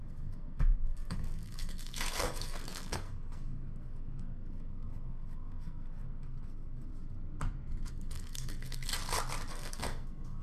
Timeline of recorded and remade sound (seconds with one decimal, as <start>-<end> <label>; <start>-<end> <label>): 0.0-6.9 remade; 6.9-7.9 recorded; 7.9-8.9 remade; 8.9-9.5 recorded; 9.5-10.4 remade